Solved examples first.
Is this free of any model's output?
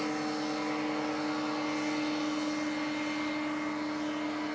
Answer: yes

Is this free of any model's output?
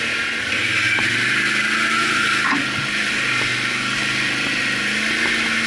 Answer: yes